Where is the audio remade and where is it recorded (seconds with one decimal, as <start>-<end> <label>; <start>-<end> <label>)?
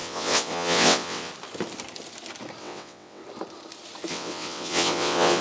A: 0.0-1.3 remade; 1.3-2.6 recorded; 2.6-3.2 remade; 3.2-4.1 recorded; 4.1-5.4 remade